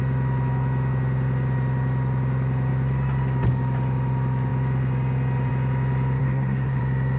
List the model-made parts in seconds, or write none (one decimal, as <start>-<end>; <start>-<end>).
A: 6.2-6.8